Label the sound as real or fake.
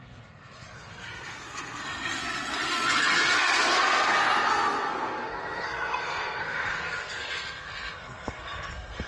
fake